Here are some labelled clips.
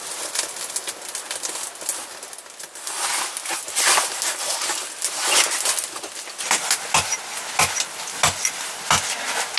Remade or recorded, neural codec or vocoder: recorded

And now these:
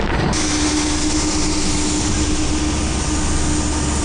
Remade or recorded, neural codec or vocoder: recorded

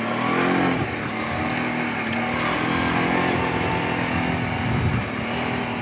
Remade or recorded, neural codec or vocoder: recorded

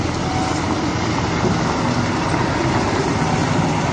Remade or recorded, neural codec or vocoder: recorded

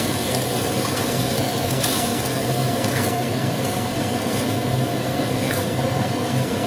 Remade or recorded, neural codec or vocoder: remade, codec, SNAC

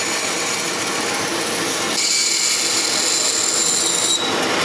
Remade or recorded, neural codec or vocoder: recorded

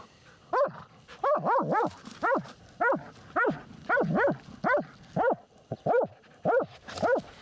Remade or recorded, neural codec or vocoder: recorded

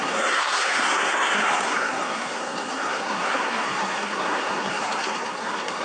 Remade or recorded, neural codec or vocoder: remade, codec, SNAC